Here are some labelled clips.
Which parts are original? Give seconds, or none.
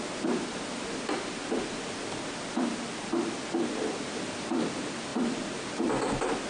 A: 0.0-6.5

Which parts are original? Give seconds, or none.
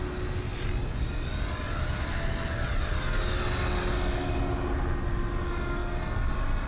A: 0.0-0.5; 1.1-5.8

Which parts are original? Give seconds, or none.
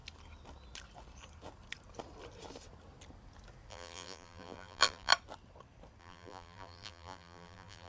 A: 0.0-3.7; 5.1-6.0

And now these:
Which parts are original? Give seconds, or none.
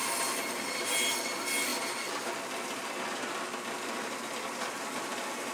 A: 0.9-5.5